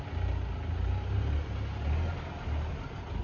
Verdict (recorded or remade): recorded